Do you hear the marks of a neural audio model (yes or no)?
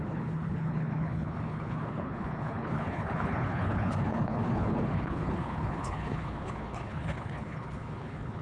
yes